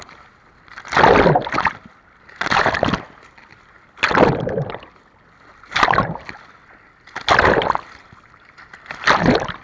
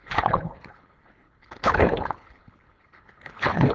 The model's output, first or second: second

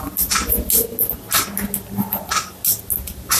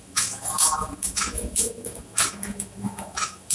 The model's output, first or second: second